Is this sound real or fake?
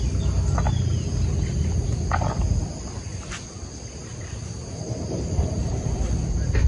real